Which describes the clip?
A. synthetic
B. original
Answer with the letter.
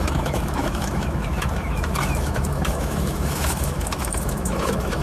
A